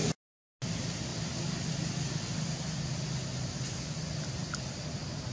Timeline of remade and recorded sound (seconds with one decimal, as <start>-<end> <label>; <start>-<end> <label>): 0.0-5.3 recorded